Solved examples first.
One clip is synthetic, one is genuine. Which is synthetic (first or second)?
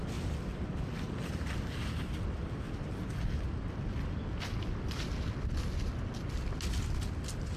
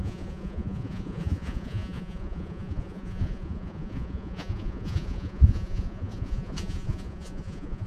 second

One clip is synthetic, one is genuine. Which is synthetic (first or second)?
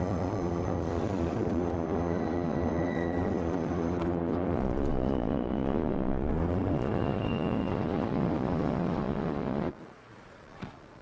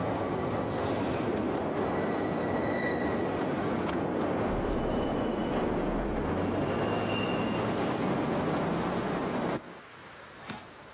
first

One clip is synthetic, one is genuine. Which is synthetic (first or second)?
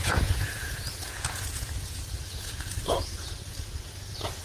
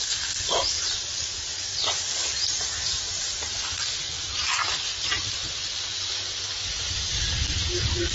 first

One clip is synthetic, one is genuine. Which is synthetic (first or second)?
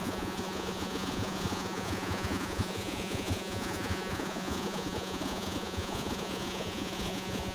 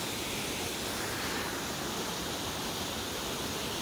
first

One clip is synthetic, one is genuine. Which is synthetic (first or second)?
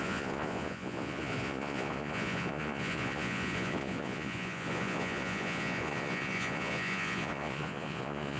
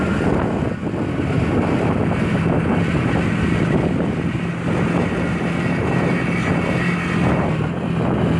first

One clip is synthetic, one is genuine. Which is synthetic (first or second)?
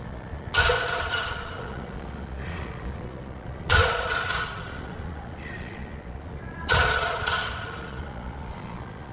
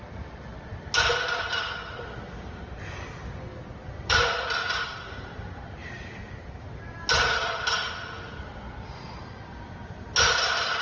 first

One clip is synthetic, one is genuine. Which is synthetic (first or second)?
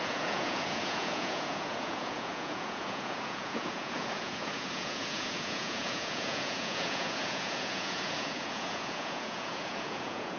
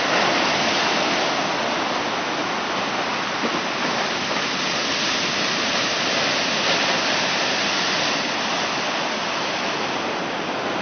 first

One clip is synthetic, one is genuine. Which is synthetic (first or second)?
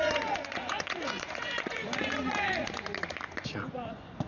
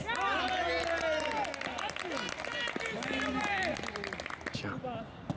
first